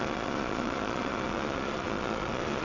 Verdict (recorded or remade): remade